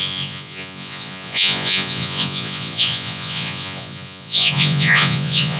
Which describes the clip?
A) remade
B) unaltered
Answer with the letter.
A